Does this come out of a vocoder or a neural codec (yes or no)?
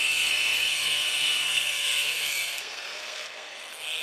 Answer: yes